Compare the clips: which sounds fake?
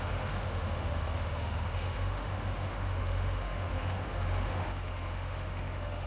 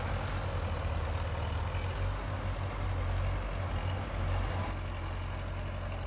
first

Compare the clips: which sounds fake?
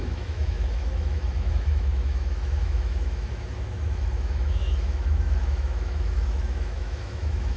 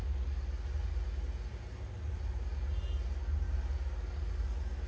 first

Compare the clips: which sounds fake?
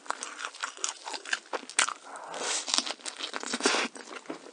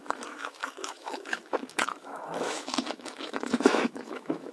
second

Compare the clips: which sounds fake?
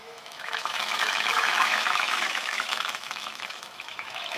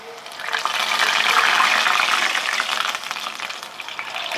first